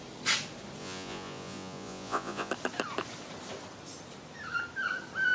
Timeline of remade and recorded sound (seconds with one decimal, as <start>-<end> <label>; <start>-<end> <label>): 0.0-0.8 recorded; 0.8-2.5 remade; 2.5-5.3 recorded